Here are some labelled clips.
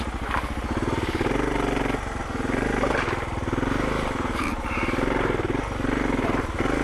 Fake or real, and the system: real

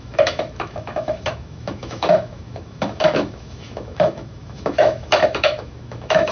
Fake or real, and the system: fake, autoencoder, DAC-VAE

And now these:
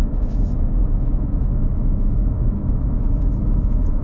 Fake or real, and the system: fake, autoencoder, DAC-VAE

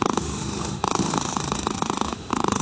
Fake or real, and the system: fake, autoencoder, DAC-VAE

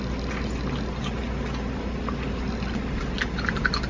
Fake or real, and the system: real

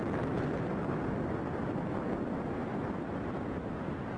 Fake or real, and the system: real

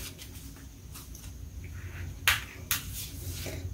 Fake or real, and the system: real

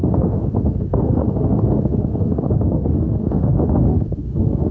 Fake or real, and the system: fake, autoencoder, DAC-VAE